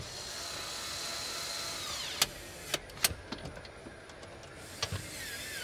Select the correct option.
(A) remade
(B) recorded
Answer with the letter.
B